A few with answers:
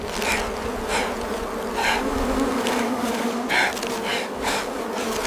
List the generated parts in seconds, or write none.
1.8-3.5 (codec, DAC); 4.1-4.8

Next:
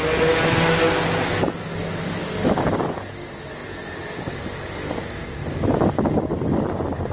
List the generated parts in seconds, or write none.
2.2-2.9 (codec, DAC)

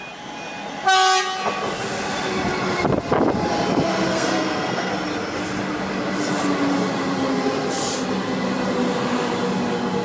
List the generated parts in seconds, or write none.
4.1-4.9 (codec, SNAC)

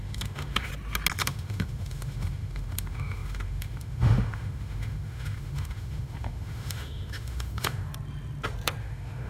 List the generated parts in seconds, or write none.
0.0-0.7 (autoencoder, DAC-VAE); 1.2-7.9; 8.8-9.3

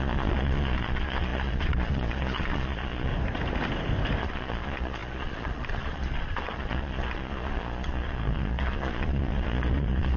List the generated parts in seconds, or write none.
0.0-3.1 (vocoder, Vocos); 4.2-10.2

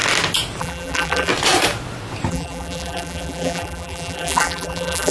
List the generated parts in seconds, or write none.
0.6-1.3 (vocoder, BigVGAN v2); 2.3-5.1

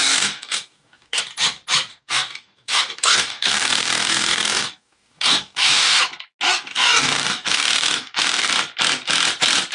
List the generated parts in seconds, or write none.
0.0-1.2 (codec, DAC); 1.9-6.0; 6.5-8.5